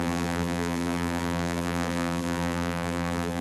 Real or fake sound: fake